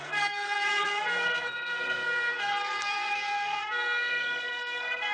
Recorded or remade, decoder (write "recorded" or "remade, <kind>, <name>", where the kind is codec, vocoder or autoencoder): remade, codec, SNAC